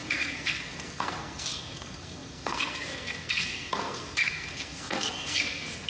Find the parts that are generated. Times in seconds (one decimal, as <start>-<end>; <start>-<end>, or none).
0.0-5.9